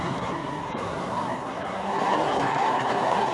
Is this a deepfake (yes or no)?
yes